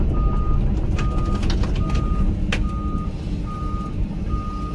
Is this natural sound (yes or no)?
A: yes